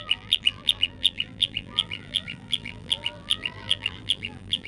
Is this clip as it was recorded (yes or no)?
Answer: no